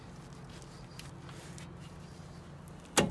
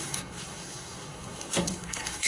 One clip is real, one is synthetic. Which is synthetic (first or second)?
second